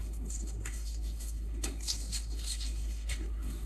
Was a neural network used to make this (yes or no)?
yes